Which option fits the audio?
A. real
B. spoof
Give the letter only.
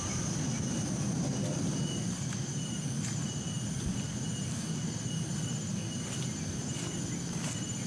A